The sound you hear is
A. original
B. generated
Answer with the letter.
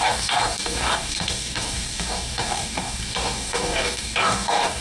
B